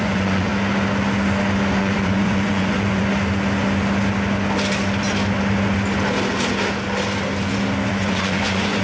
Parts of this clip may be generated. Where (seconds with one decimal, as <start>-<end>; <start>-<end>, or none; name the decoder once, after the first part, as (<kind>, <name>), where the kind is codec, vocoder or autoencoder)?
0.0-0.5 (vocoder, Vocos); 1.8-3.1; 7.9-8.8